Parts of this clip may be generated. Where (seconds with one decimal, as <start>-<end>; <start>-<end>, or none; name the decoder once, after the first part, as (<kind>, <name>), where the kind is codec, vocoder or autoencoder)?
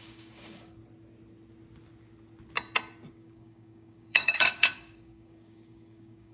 0.0-0.8 (codec, DAC); 3.1-6.3